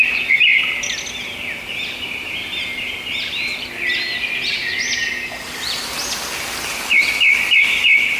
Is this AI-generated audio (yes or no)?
no